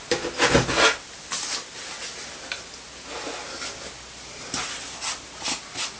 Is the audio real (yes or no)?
yes